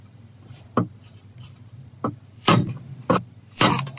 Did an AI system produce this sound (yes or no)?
yes